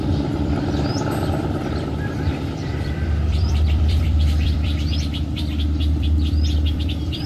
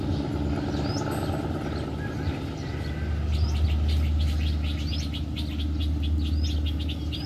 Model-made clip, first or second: first